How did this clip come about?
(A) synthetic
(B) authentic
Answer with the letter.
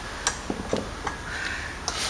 B